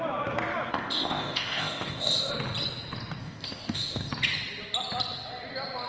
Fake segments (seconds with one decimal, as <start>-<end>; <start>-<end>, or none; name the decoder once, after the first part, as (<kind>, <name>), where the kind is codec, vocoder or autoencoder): 0.7-2.3 (codec, ZipCodec); 3.2-4.1